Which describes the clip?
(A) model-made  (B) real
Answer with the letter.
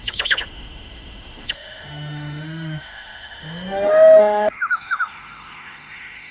A